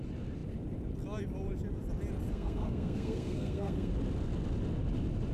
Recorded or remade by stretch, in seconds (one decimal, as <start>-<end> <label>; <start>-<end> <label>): 0.0-2.3 recorded; 2.3-3.9 remade; 3.9-5.3 recorded